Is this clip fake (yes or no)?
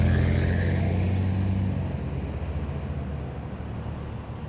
no